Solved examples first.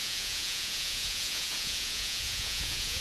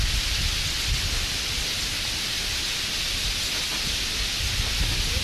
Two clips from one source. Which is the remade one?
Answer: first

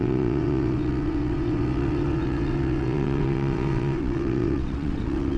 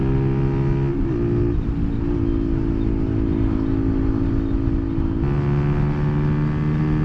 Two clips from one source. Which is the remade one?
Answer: first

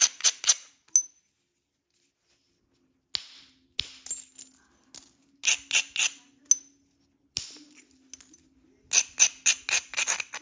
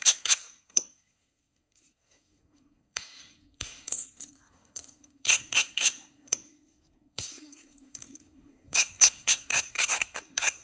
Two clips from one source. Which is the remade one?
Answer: second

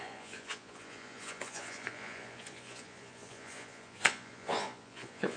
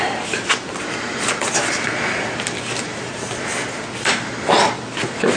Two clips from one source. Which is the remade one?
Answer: first